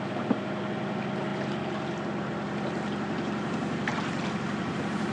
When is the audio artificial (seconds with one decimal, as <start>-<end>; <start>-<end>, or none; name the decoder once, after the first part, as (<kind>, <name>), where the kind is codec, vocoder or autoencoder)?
none